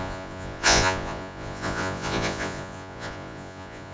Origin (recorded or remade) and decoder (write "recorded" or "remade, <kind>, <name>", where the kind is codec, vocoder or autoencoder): remade, vocoder, Vocos